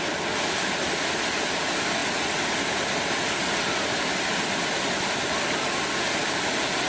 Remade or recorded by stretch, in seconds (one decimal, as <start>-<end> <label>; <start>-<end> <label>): 0.0-6.9 recorded